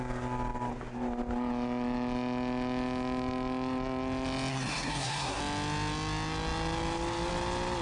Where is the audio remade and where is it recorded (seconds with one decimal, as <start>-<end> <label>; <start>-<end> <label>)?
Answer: 0.0-4.5 recorded; 4.5-5.4 remade; 5.4-7.8 recorded